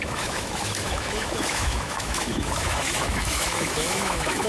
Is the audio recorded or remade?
remade